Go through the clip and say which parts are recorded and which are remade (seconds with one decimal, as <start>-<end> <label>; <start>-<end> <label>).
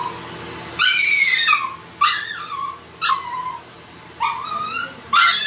0.0-5.5 recorded